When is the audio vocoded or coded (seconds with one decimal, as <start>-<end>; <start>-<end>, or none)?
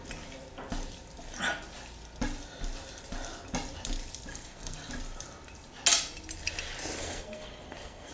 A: 4.3-4.9; 7.0-8.1